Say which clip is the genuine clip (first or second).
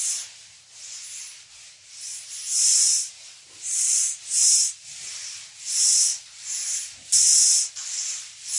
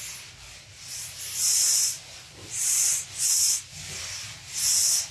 second